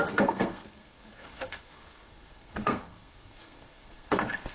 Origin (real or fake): fake